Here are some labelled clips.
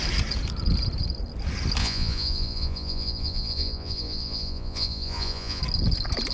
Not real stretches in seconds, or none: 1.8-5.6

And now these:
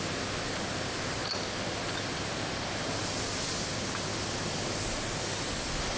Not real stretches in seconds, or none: none